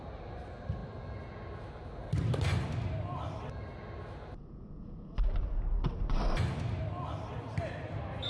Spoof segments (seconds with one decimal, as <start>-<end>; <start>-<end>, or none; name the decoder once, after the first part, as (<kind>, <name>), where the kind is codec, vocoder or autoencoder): none